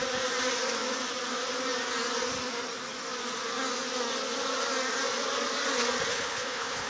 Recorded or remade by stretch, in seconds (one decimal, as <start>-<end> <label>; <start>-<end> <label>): 0.0-6.1 recorded; 6.1-6.9 remade